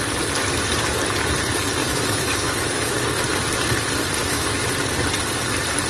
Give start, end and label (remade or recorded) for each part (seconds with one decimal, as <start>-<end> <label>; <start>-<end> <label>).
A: 0.0-1.8 recorded; 1.8-3.0 remade; 3.0-4.2 recorded; 4.2-4.7 remade; 4.7-5.9 recorded